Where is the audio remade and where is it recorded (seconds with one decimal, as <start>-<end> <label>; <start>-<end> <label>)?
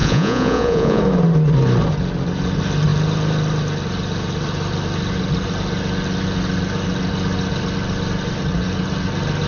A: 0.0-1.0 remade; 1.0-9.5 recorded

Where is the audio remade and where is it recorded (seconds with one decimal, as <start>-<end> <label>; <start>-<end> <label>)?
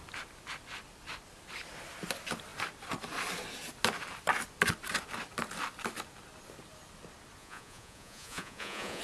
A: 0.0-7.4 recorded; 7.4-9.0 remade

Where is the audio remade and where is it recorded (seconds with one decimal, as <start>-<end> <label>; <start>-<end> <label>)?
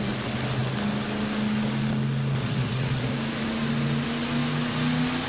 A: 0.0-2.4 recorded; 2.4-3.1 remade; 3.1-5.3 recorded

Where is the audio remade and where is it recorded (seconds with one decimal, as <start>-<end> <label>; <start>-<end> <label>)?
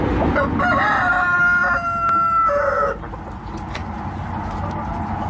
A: 0.0-5.3 recorded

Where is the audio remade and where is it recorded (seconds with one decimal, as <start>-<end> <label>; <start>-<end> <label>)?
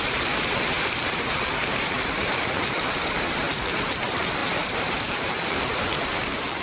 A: 0.0-6.6 remade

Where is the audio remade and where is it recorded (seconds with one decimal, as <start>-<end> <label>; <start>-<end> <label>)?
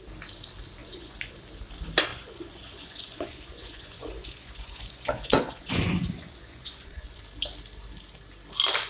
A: 0.0-0.8 recorded; 0.8-1.3 remade; 1.3-2.1 recorded; 2.1-7.2 remade; 7.2-8.9 recorded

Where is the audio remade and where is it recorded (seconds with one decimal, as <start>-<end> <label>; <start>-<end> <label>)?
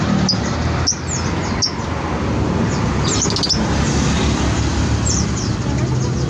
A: 0.0-4.7 recorded; 4.7-5.5 remade; 5.5-6.3 recorded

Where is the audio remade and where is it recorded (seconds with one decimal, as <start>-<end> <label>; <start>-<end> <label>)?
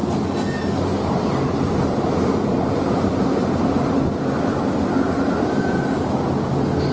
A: 0.0-6.9 recorded